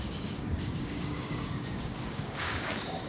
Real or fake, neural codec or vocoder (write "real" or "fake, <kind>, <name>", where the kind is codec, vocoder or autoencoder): fake, codec, DAC